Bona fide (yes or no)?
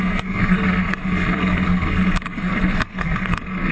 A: no